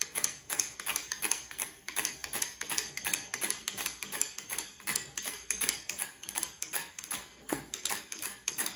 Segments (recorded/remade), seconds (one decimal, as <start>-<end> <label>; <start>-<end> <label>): 0.0-8.8 remade